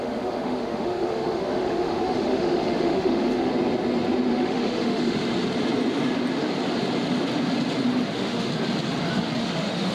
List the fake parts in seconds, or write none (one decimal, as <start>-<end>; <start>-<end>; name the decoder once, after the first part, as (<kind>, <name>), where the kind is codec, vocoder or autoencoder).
0.0-3.5 (autoencoder, DAC-VAE); 4.3-5.3; 8.1-8.5; 9.4-9.9